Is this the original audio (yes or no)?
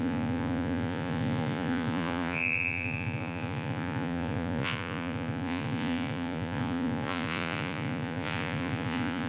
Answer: no